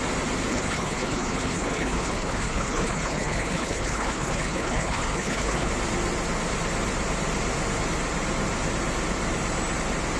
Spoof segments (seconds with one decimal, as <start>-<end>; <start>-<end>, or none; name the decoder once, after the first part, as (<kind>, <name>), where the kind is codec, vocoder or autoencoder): 0.5-5.7 (codec, HILCodec)

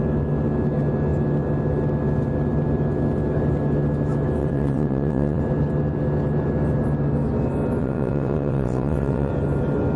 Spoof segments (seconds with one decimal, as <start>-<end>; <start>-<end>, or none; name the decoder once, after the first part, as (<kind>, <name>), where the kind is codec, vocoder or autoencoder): 4.4-5.4 (vocoder, WaveNeXt); 7.8-9.3

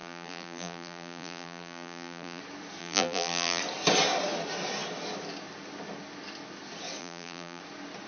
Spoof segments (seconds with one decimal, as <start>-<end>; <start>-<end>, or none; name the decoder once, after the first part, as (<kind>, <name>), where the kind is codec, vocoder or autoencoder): 0.0-2.4 (vocoder, BigVGAN v2); 2.8-3.6; 7.0-7.6